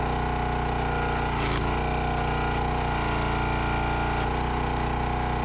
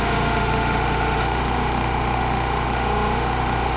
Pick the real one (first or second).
first